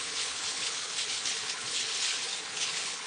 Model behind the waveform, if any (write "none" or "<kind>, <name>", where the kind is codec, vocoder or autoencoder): codec, HILCodec